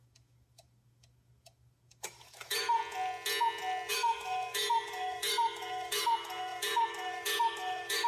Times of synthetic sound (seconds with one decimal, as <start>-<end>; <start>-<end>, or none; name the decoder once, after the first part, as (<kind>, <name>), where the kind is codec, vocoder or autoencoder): 0.0-2.8 (autoencoder, DAC-VAE); 3.9-8.1